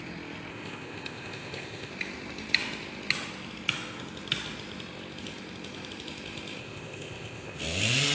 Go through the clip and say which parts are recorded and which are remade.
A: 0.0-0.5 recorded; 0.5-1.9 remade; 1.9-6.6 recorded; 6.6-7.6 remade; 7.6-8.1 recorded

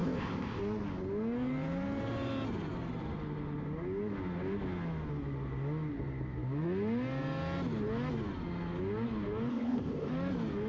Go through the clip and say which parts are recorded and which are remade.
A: 0.0-0.6 remade; 0.6-9.5 recorded; 9.5-10.1 remade; 10.1-10.7 recorded

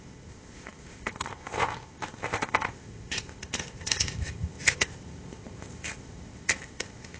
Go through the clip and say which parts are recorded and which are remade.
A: 0.0-7.2 remade